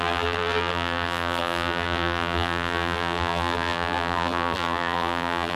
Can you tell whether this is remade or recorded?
remade